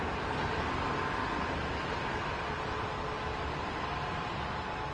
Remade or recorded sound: recorded